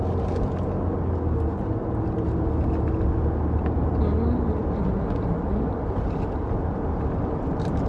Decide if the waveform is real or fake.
real